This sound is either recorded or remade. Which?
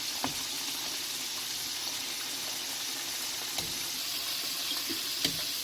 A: recorded